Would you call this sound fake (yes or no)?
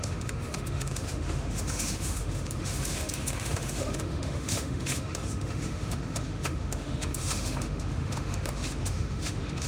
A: yes